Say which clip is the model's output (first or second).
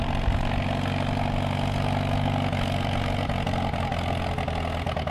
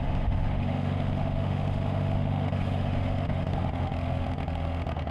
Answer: second